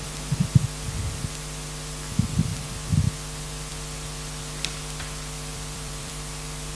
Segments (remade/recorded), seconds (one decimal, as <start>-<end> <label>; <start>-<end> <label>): 0.0-5.5 recorded; 5.5-6.1 remade; 6.1-6.7 recorded